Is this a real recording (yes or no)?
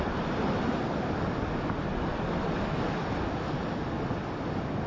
yes